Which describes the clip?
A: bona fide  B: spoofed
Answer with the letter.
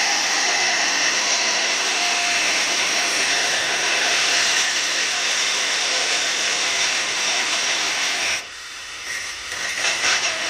B